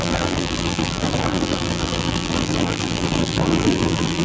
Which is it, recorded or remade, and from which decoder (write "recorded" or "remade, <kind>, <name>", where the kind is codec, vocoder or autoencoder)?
remade, vocoder, BigVGAN v2